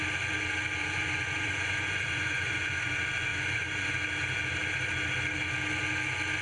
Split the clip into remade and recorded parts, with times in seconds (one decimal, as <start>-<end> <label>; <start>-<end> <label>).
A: 0.0-0.8 recorded; 0.8-2.9 remade; 2.9-3.3 recorded; 3.3-3.9 remade; 3.9-6.4 recorded

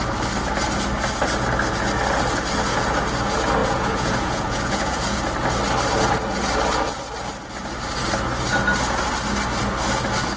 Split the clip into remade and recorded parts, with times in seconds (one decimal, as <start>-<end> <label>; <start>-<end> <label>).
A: 0.0-3.6 recorded; 3.6-5.2 remade; 5.2-10.4 recorded

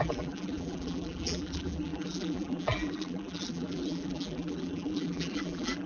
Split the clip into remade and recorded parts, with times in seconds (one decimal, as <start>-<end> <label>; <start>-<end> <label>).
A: 0.0-5.9 remade

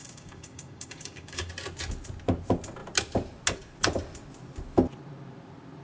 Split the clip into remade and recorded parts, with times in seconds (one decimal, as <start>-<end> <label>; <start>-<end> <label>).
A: 0.0-1.5 remade; 1.5-5.8 recorded

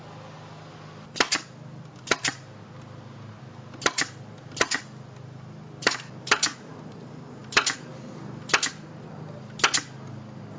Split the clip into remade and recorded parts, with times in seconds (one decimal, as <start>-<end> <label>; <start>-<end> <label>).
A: 0.0-10.6 recorded

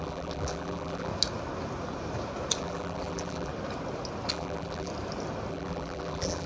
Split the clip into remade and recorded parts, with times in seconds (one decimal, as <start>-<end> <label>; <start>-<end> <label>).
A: 0.0-1.1 remade; 1.1-2.6 recorded; 2.6-3.5 remade; 3.5-4.3 recorded; 4.3-4.9 remade; 4.9-5.5 recorded; 5.5-6.5 remade